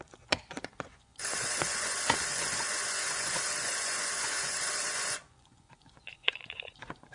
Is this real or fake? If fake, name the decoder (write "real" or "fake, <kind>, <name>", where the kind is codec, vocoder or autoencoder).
fake, vocoder, Vocos